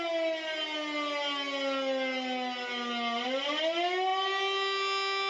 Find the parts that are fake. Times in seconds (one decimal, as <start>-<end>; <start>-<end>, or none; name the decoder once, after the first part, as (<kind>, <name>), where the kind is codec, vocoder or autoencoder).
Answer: none